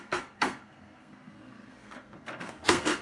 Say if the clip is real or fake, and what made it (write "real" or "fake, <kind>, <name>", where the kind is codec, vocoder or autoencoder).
fake, codec, SNAC